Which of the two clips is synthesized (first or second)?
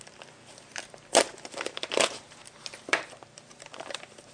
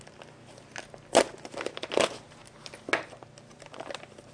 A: first